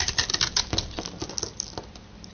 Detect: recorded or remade recorded